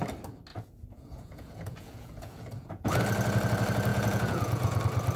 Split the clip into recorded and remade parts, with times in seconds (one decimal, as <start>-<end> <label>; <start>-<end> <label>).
0.0-0.5 recorded; 0.5-3.0 remade; 3.0-3.9 recorded; 3.9-4.8 remade; 4.8-5.2 recorded